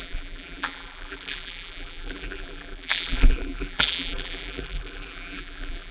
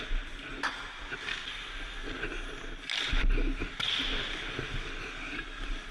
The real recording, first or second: second